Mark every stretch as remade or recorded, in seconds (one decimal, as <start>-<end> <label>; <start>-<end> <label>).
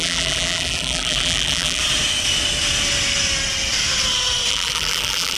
0.0-1.8 remade; 1.8-4.5 recorded; 4.5-5.4 remade